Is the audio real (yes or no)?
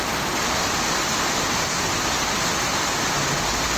yes